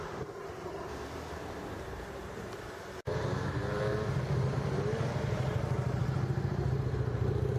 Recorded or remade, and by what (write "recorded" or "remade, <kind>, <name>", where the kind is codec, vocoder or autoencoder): remade, vocoder, BigVGAN v2